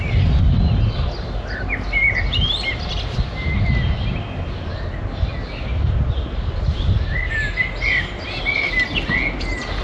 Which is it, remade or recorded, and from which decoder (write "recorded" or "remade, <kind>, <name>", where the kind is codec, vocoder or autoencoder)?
recorded